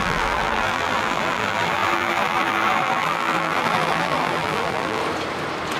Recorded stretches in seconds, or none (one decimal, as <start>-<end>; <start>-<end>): 5.0-5.8